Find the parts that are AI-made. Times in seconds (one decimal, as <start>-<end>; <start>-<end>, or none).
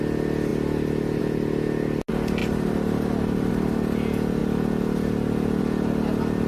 2.4-3.5